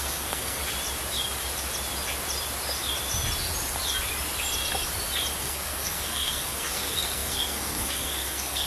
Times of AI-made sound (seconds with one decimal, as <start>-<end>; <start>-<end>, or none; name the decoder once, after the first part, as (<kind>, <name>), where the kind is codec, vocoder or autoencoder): 0.0-0.6 (codec, SNAC); 5.4-8.7